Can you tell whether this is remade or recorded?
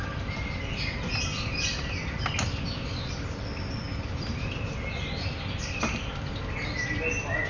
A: recorded